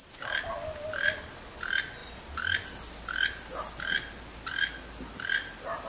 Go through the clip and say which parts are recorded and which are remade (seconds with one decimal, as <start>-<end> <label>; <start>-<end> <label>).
0.0-1.5 remade; 1.5-5.9 recorded

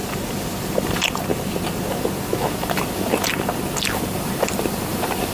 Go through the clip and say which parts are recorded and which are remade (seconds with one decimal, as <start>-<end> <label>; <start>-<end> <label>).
0.0-5.3 recorded